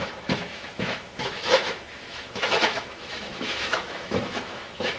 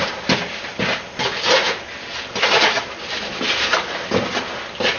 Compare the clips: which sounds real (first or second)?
second